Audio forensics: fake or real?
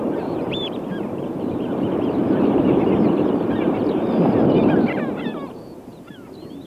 fake